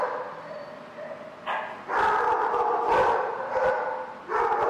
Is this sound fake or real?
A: real